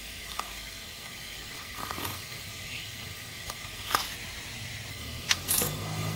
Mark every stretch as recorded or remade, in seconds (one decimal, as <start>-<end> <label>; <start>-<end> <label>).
0.0-3.9 remade; 3.9-4.9 recorded; 4.9-6.2 remade

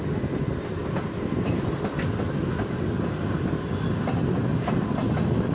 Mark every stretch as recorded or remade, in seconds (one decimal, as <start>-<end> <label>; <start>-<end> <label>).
0.0-5.5 recorded

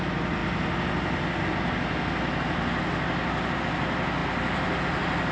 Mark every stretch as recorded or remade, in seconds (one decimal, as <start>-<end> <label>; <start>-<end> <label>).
0.0-5.3 recorded

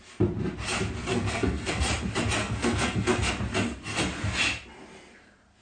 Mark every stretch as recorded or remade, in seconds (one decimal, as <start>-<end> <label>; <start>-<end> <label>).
0.0-1.1 recorded; 1.1-1.8 remade; 1.8-2.4 recorded; 2.4-3.3 remade; 3.3-5.6 recorded

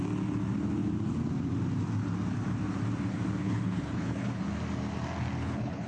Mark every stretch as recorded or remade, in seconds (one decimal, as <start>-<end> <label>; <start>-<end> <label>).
0.0-3.4 recorded; 3.4-4.4 remade; 4.4-5.4 recorded; 5.4-5.9 remade

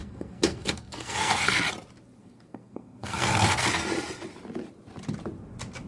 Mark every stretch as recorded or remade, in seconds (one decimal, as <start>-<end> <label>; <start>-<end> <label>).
0.0-1.6 remade; 1.6-2.2 recorded; 2.2-3.7 remade; 3.7-5.9 recorded